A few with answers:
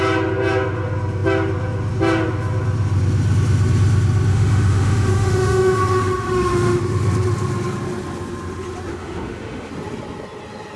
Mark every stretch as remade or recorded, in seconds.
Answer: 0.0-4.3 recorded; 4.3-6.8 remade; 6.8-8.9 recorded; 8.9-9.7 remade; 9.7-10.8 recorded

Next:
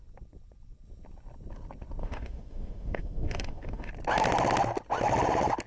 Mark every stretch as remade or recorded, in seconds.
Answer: 0.0-2.0 recorded; 2.0-3.9 remade; 3.9-5.7 recorded

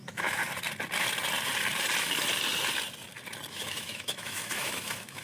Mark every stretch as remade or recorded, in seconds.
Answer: 0.0-0.4 remade; 0.4-3.5 recorded; 3.5-5.2 remade

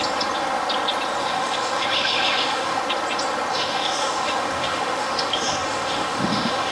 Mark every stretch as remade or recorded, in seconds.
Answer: 0.0-1.2 recorded; 1.2-2.8 remade; 2.8-3.5 recorded; 3.5-6.7 remade

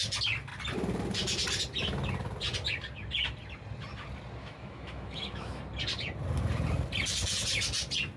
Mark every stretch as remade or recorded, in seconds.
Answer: 0.0-4.4 recorded; 4.4-5.6 remade; 5.6-8.2 recorded

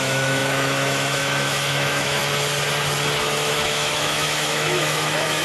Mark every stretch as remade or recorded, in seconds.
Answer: 0.0-2.2 remade; 2.2-3.2 recorded; 3.2-5.4 remade